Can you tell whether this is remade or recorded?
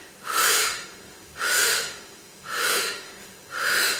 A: remade